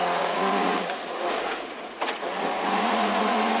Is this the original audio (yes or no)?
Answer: no